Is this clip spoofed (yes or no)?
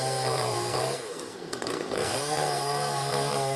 yes